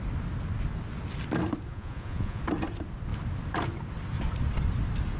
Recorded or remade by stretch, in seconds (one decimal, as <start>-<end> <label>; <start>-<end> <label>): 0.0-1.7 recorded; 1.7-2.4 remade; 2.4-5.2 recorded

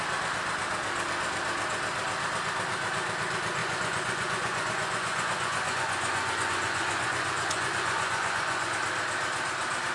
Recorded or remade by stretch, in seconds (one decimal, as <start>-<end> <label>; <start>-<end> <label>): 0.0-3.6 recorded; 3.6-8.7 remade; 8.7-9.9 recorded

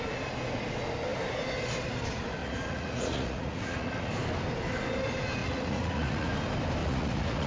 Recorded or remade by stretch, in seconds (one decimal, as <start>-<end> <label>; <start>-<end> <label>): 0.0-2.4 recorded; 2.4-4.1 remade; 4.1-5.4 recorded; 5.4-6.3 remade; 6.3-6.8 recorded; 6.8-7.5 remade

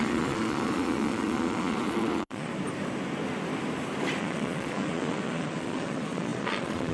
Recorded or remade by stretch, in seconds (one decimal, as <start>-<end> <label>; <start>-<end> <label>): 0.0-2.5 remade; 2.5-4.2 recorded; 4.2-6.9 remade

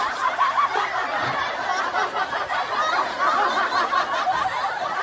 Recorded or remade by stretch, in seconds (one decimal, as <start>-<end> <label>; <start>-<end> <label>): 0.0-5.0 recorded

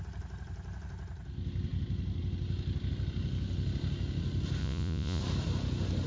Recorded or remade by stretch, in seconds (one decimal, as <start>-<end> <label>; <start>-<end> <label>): 0.0-4.6 recorded; 4.6-5.2 remade; 5.2-6.1 recorded

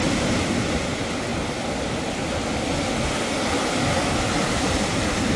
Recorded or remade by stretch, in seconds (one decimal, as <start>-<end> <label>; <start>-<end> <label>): 0.0-5.4 recorded

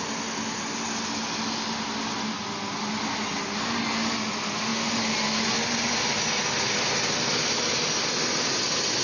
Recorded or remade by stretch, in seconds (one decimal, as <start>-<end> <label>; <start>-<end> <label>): 0.0-9.0 recorded